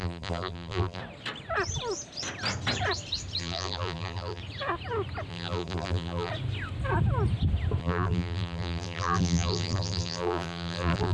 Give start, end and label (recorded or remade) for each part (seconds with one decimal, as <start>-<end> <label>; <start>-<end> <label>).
0.0-1.0 remade; 1.0-3.4 recorded; 3.4-4.4 remade; 4.4-5.3 recorded; 5.3-6.3 remade; 6.3-7.8 recorded; 7.8-11.1 remade